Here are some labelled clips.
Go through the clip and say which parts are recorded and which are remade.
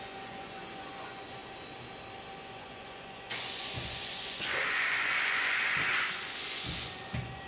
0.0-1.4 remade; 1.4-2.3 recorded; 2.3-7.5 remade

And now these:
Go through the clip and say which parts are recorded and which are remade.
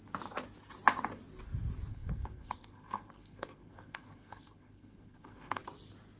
0.0-1.9 recorded; 1.9-5.6 remade; 5.6-6.2 recorded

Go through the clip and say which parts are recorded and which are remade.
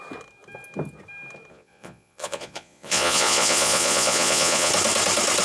0.0-1.5 recorded; 1.5-4.7 remade; 4.7-5.4 recorded